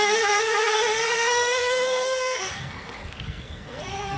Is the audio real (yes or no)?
no